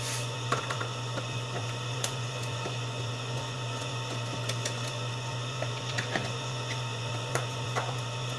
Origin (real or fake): fake